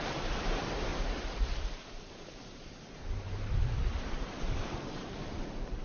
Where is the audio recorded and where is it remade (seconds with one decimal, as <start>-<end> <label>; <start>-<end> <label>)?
0.0-0.9 remade; 0.9-3.9 recorded; 3.9-5.8 remade